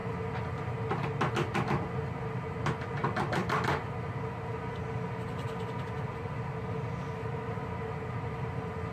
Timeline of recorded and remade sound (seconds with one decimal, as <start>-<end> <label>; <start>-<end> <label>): 0.0-8.9 recorded